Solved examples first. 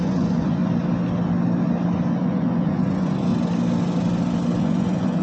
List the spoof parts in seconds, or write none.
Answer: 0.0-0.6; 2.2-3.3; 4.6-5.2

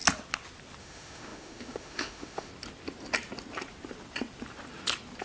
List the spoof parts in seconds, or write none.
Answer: 0.8-2.5

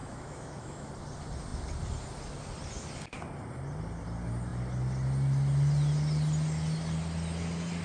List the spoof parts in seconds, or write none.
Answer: 0.0-0.9

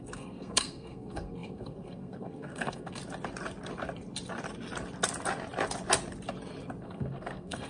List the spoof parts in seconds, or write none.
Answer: 0.0-3.0; 6.8-7.7